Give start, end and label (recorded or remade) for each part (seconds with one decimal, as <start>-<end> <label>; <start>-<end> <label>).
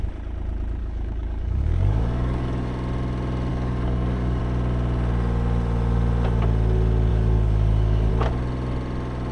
0.0-0.8 recorded; 0.8-2.7 remade; 2.7-3.5 recorded; 3.5-4.4 remade; 4.4-7.1 recorded; 7.1-8.1 remade; 8.1-9.3 recorded